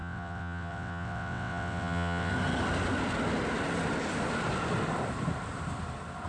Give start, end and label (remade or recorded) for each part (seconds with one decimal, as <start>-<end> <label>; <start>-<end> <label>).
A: 0.0-2.3 remade; 2.3-6.3 recorded